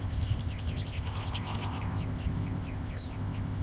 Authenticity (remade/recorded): remade